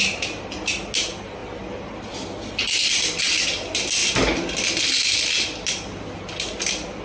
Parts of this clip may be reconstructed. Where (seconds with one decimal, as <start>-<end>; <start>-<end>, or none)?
none